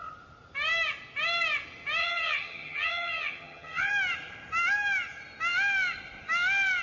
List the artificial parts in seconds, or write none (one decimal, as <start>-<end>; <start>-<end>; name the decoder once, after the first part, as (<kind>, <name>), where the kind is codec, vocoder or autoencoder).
2.0-3.9 (vocoder, HiFi-GAN)